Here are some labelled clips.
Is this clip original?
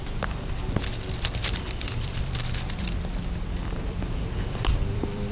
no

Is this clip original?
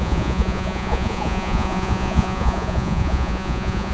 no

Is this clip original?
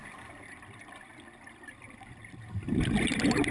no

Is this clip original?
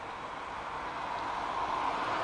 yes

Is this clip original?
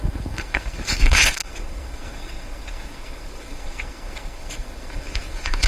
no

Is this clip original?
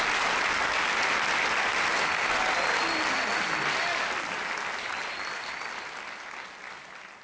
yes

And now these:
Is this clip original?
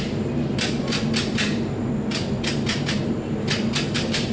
yes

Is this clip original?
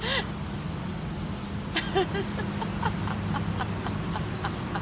yes